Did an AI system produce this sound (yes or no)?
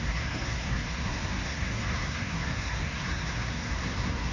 yes